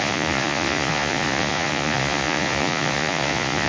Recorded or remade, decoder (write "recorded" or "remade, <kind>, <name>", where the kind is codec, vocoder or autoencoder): remade, vocoder, Vocos